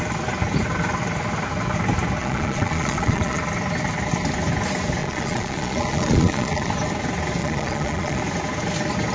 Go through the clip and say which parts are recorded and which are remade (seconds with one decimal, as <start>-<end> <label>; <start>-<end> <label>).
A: 0.0-2.2 recorded; 2.2-3.4 remade; 3.4-5.0 recorded; 5.0-6.7 remade; 6.7-7.4 recorded; 7.4-8.2 remade; 8.2-9.1 recorded